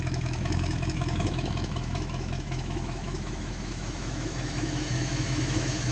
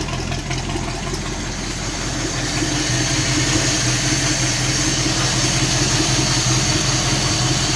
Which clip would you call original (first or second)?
second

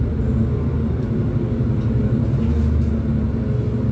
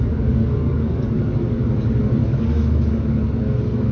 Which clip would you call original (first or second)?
first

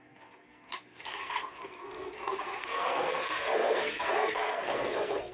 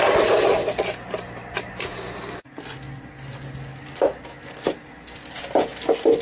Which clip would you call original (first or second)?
second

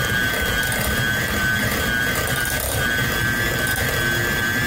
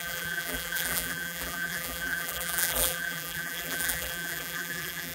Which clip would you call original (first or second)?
first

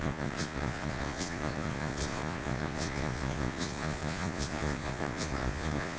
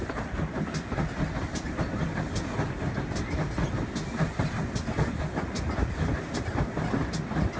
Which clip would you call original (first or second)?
second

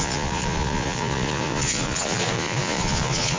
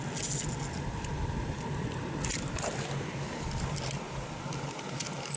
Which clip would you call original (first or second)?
second